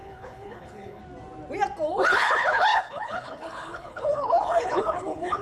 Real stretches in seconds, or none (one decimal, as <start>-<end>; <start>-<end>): 1.0-1.9